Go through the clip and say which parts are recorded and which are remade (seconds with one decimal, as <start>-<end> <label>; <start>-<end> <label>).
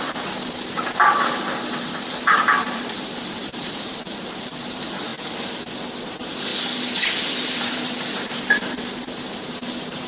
0.0-5.1 remade; 5.1-6.1 recorded; 6.1-6.5 remade; 6.5-7.3 recorded; 7.3-10.1 remade